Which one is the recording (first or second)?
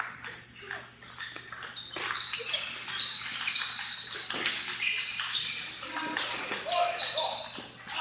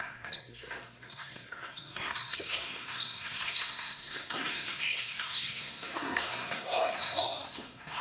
first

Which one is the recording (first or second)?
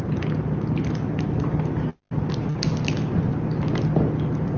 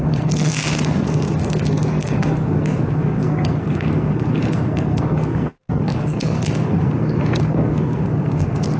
first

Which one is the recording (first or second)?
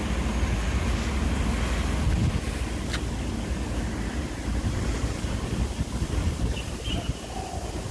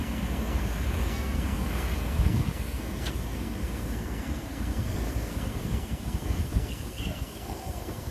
first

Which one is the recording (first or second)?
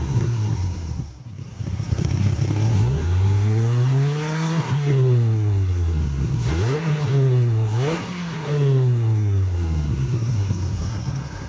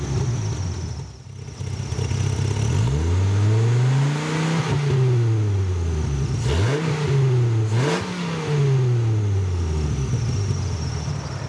second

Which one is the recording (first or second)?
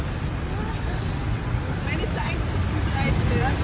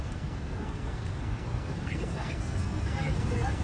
first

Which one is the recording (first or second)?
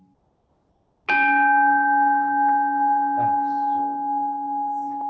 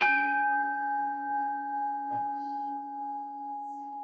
first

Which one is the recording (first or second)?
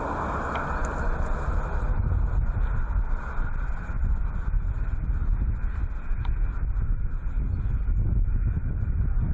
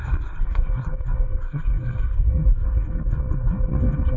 first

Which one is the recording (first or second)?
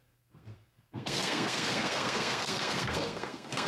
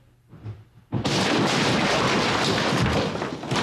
second